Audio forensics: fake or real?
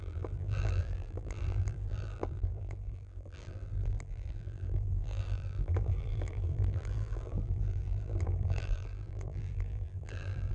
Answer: fake